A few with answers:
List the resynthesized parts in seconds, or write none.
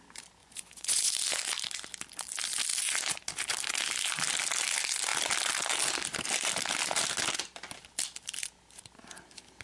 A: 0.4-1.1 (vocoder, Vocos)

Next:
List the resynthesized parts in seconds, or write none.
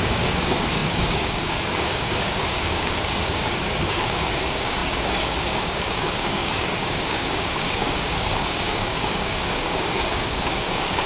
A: 0.0-11.1 (codec, DAC)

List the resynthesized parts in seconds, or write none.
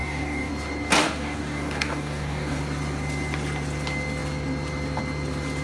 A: 0.0-0.5 (codec, DAC); 1.0-2.6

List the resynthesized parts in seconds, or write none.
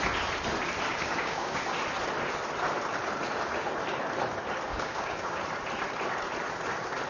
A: 0.9-1.6 (codec, DAC); 4.7-5.4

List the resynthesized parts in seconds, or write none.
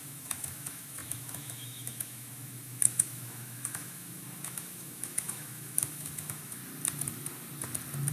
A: 0.0-6.6 (autoencoder, DAC-VAE)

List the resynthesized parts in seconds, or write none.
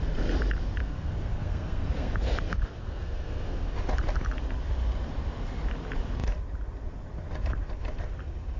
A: 0.8-2.1 (codec, SNAC); 2.8-3.7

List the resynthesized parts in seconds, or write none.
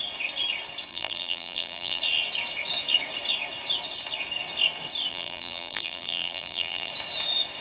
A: 0.9-2.0 (vocoder, BigVGAN v2); 5.1-6.9